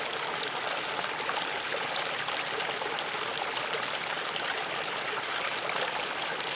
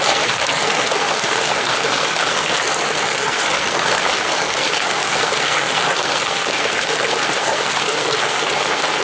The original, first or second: first